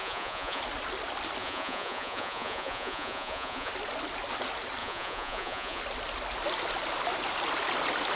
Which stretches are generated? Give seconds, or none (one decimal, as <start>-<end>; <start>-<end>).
0.0-0.6; 1.4-3.7; 4.8-5.8